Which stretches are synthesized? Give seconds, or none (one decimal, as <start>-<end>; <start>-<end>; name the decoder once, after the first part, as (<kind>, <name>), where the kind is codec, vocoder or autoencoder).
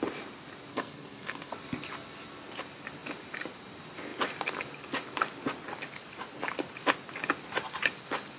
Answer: 0.7-1.5 (codec, SNAC)